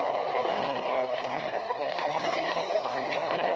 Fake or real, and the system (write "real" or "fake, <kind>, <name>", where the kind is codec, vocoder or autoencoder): fake, codec, SNAC